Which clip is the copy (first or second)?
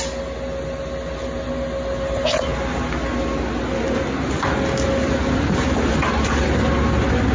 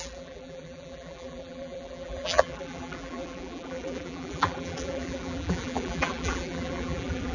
second